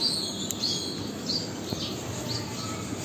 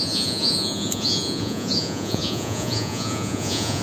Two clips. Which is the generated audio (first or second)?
second